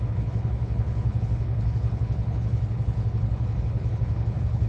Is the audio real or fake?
fake